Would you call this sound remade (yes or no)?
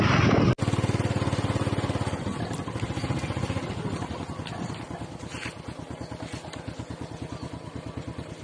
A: no